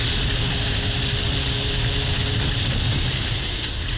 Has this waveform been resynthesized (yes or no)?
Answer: no